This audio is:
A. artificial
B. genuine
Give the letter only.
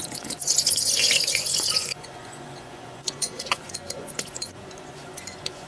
A